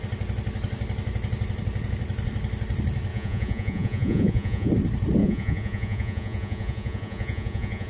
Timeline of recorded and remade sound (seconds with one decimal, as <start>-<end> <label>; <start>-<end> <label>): 0.0-3.1 recorded; 3.1-4.7 remade; 4.7-5.2 recorded; 5.2-7.9 remade

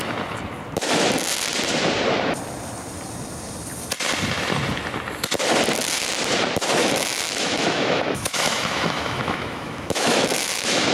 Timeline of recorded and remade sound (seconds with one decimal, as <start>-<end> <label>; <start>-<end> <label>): 0.0-6.8 recorded; 6.8-10.9 remade

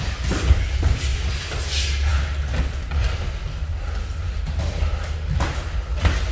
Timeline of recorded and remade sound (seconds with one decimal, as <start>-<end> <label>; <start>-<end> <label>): 0.0-1.1 recorded; 1.1-1.6 remade; 1.6-6.3 recorded